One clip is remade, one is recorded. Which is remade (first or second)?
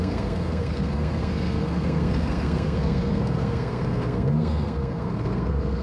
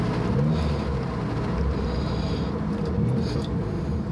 first